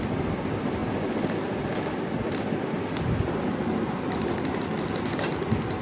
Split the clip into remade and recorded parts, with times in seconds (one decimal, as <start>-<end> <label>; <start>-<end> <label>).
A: 0.0-5.8 recorded